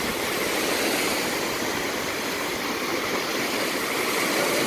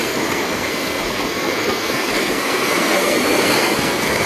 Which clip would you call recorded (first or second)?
first